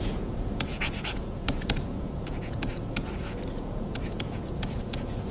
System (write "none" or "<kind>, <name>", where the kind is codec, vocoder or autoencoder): vocoder, Vocos